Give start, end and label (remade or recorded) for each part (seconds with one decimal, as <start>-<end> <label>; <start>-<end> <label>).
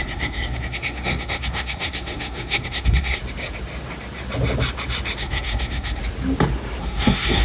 0.0-3.2 remade; 3.2-5.2 recorded; 5.2-6.0 remade; 6.0-6.8 recorded; 6.8-7.4 remade